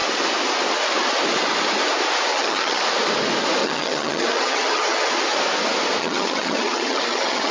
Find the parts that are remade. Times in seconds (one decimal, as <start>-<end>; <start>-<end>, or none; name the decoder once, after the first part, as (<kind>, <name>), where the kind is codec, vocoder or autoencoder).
2.3-2.8 (vocoder, HiFi-GAN); 3.6-5.1; 6.0-7.5